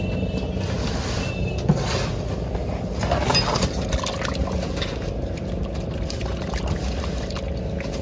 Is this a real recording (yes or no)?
yes